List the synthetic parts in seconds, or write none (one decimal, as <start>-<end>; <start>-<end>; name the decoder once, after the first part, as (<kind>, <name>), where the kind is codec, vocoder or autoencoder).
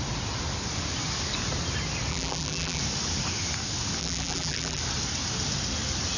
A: 2.1-2.8 (vocoder, BigVGAN v2); 4.0-4.8